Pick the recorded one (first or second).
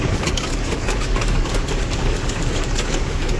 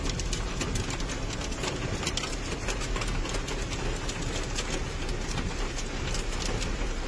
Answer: second